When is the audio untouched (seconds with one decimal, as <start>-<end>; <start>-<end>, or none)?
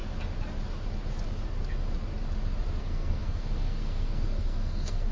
0.0-2.8